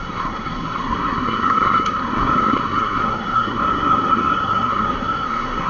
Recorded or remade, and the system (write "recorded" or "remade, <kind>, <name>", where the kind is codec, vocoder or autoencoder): remade, codec, SNAC